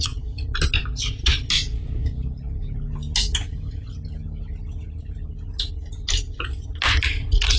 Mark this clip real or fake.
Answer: real